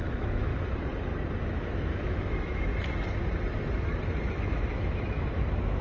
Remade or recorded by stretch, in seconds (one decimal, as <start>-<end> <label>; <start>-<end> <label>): 0.0-0.5 remade; 0.5-1.4 recorded; 1.4-2.7 remade; 2.7-4.4 recorded; 4.4-5.8 remade